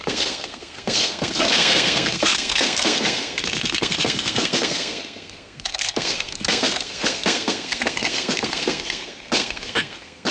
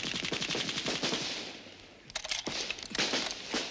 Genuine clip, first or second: second